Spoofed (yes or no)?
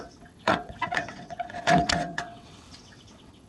yes